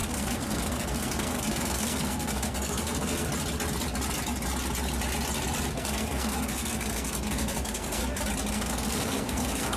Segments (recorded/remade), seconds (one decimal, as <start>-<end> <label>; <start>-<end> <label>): 0.0-3.3 remade; 3.3-5.7 recorded; 5.7-8.0 remade; 8.0-8.5 recorded; 8.5-9.8 remade